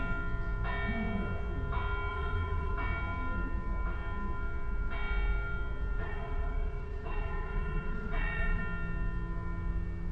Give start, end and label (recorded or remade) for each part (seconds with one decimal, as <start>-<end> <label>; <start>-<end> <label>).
0.0-2.1 recorded; 2.1-2.7 remade; 2.7-6.0 recorded; 6.0-8.6 remade; 8.6-10.1 recorded